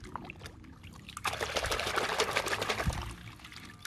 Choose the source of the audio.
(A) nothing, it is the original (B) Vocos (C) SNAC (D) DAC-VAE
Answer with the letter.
A